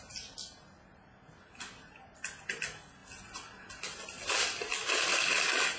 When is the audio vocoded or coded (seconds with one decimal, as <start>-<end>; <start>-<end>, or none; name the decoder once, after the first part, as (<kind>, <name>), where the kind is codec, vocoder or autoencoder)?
none

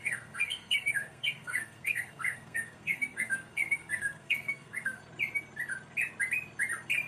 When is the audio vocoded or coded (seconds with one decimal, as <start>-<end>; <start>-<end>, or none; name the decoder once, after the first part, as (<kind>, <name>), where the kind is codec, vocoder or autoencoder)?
0.0-5.0 (codec, SNAC)

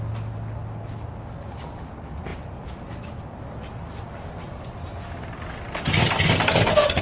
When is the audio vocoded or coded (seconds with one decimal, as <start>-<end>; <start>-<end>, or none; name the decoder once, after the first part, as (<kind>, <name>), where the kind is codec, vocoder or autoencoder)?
2.3-3.2 (vocoder, BigVGAN v2)

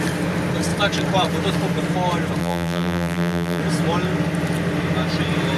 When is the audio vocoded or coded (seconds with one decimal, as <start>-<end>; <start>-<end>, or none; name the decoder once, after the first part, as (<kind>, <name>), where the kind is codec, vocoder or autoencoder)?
2.4-3.6 (vocoder, BigVGAN v2)

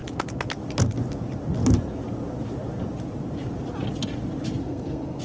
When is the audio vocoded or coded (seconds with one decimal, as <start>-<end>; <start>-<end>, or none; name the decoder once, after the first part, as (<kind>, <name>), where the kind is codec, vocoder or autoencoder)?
4.6-5.2 (codec, SNAC)

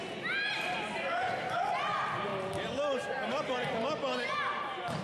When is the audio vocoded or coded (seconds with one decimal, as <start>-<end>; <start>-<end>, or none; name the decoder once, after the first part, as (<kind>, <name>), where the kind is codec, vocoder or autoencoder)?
none

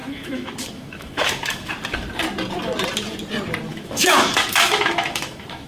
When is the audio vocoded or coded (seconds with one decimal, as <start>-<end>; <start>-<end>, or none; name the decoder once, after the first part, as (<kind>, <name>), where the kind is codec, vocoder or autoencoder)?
0.0-1.7 (autoencoder, DAC-VAE); 3.7-5.7

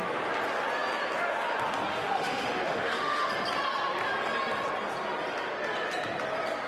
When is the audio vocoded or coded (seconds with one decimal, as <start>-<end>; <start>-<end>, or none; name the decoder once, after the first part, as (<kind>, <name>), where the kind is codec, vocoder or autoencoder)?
1.9-3.3 (autoencoder, DAC-VAE)